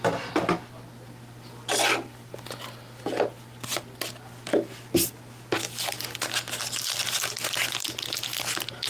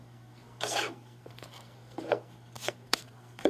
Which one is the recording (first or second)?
first